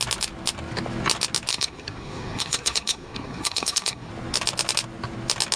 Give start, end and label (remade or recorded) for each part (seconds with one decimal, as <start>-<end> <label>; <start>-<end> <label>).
0.0-1.5 recorded; 1.5-4.1 remade; 4.1-5.6 recorded